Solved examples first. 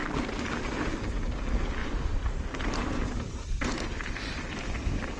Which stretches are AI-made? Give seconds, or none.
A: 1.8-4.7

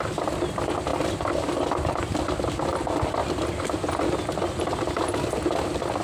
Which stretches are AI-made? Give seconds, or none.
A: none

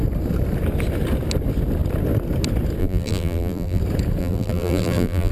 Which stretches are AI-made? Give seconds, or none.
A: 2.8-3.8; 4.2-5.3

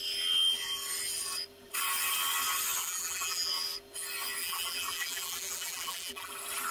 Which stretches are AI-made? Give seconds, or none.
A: 2.8-3.5; 4.4-6.3

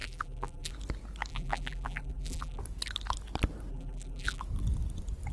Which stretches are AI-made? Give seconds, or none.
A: 0.0-0.7; 1.3-2.6; 3.7-4.4

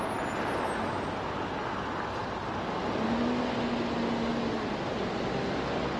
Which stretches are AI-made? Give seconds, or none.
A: 4.3-5.0

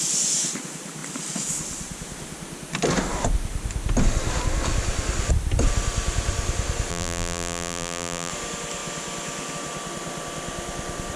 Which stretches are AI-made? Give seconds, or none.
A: 6.9-8.3